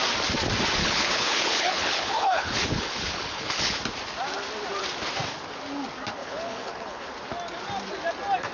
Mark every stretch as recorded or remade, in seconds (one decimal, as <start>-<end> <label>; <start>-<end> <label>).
0.0-0.8 recorded; 0.8-3.8 remade; 3.8-6.2 recorded; 6.2-7.1 remade; 7.1-8.5 recorded